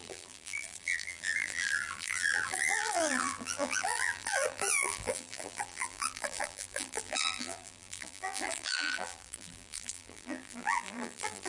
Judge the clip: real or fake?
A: fake